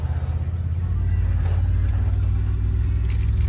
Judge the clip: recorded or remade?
recorded